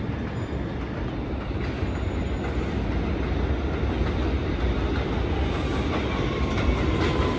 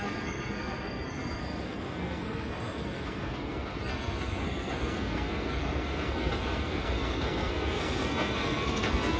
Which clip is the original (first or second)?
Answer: first